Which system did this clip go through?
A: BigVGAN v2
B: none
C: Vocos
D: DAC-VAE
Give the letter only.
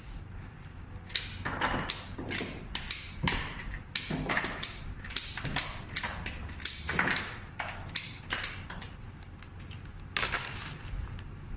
B